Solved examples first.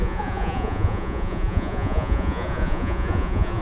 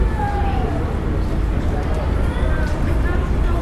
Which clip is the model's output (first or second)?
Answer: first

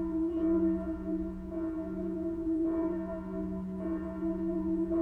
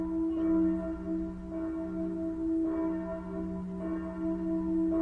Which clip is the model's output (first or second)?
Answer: first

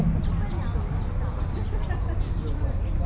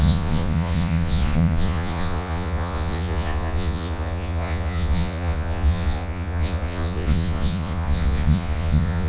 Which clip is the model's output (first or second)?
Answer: second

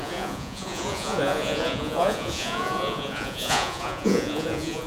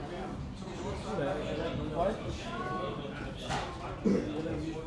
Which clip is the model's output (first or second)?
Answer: first